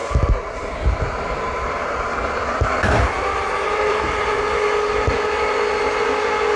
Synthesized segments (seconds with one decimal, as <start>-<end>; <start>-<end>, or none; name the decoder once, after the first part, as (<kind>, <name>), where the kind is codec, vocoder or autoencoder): 0.0-4.0 (vocoder, BigVGAN v2)